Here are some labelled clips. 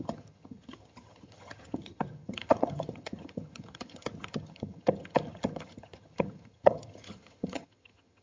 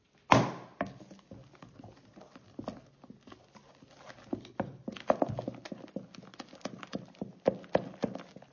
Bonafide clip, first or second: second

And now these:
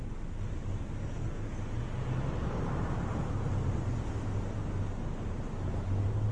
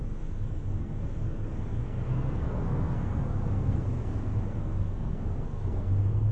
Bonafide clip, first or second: first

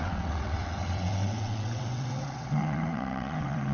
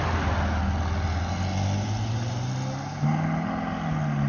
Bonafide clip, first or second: second